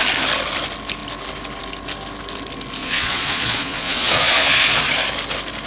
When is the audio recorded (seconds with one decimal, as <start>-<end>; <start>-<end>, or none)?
0.0-2.8; 4.8-5.7